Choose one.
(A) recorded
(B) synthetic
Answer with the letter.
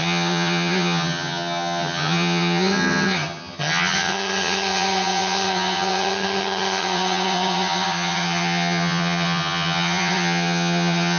B